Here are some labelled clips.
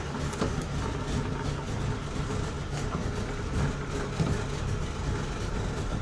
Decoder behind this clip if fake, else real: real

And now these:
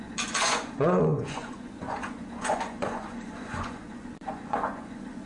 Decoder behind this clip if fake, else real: fake, vocoder, Vocos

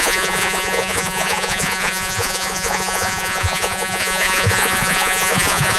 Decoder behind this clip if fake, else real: fake, vocoder, Vocos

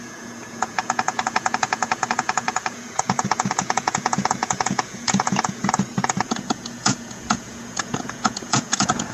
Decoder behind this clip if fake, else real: fake, vocoder, Vocos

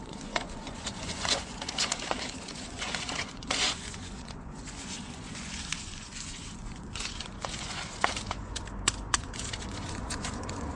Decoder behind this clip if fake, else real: fake, vocoder, Vocos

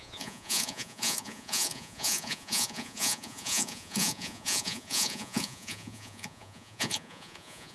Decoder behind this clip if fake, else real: fake, vocoder, Vocos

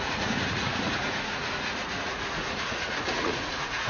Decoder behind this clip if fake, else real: fake, vocoder, Vocos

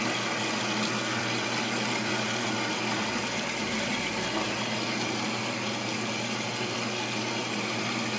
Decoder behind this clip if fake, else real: real